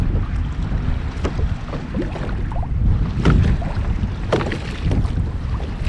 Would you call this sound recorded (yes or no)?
yes